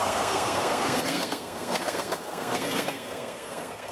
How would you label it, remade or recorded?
remade